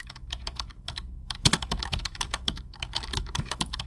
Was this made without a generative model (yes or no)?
no